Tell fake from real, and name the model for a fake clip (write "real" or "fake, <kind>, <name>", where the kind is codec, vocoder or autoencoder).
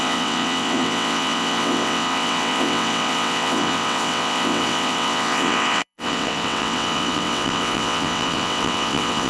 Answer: fake, vocoder, WaveNeXt